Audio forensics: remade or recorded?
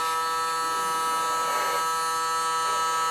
recorded